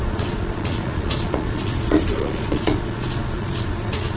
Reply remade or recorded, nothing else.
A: remade